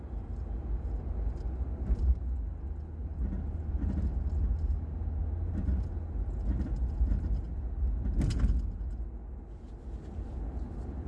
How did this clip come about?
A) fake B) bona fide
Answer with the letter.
B